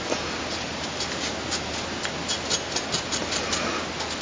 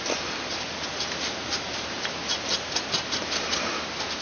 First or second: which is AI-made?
second